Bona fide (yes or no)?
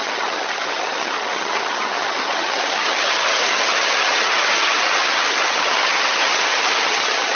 no